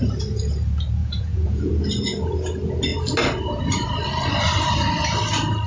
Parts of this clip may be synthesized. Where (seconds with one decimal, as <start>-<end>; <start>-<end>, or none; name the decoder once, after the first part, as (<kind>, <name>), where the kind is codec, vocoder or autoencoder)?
1.0-1.7 (vocoder, Vocos)